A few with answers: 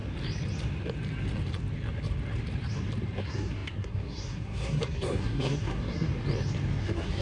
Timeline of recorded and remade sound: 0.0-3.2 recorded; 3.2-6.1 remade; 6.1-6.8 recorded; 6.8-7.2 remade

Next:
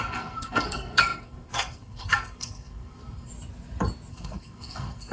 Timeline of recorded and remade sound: 0.0-3.3 remade; 3.3-4.1 recorded; 4.1-5.1 remade

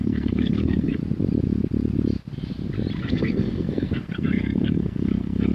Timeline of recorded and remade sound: 0.0-1.0 remade; 1.0-3.0 recorded; 3.0-5.5 remade

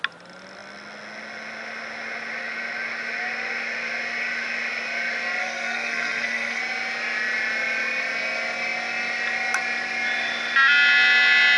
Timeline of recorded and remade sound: 0.0-5.4 recorded; 5.4-6.6 remade; 6.6-11.6 recorded

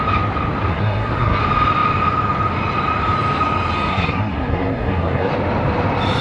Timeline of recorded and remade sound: 0.0-0.7 recorded; 0.7-1.4 remade; 1.4-3.9 recorded; 3.9-5.3 remade; 5.3-6.2 recorded

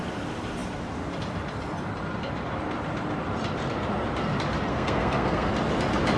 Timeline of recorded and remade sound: 0.0-4.7 recorded; 4.7-5.5 remade; 5.5-6.2 recorded

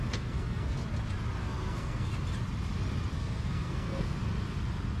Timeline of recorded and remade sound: 0.0-0.8 remade; 0.8-1.4 recorded; 1.4-2.1 remade; 2.1-3.1 recorded; 3.1-4.2 remade; 4.2-5.0 recorded

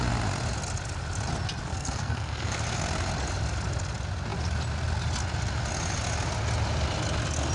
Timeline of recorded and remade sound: 0.0-1.7 recorded; 1.7-2.6 remade; 2.6-7.5 recorded